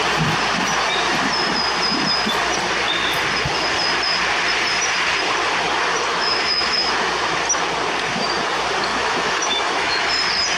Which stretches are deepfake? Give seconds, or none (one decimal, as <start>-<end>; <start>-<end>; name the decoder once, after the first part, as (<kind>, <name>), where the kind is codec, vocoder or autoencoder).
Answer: 6.1-6.9 (autoencoder, DAC-VAE); 8.9-10.1